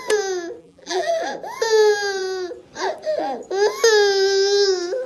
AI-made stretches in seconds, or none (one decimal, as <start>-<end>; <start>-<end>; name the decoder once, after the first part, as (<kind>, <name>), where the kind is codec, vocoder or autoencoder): 0.6-1.1 (vocoder, BigVGAN v2)